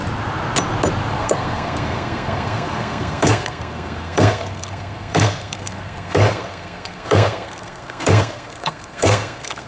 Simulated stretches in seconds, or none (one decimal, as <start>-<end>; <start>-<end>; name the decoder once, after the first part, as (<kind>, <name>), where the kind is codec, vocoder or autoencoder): 1.1-9.7 (codec, SNAC)

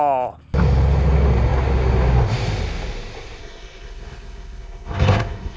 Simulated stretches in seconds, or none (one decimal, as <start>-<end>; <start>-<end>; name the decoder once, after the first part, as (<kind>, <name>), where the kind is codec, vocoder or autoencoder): 3.4-5.6 (codec, SNAC)

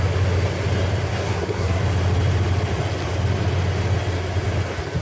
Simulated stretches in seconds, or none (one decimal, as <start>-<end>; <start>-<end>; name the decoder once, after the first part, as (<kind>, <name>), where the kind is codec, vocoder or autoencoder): 1.1-1.8 (codec, SNAC)